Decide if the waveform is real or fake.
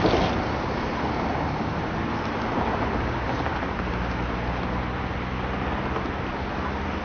real